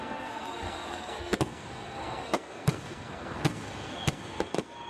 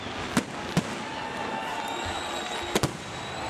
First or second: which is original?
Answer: second